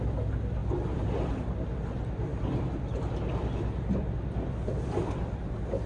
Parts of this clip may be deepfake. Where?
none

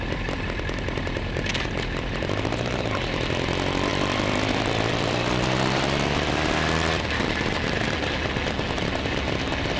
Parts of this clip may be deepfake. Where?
none

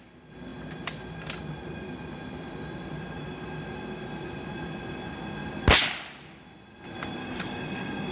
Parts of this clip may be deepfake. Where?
7.2-8.1